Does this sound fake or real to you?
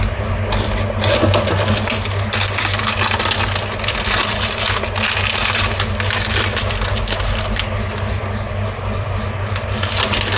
real